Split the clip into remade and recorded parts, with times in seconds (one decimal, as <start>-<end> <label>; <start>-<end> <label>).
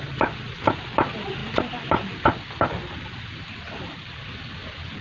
0.0-5.0 recorded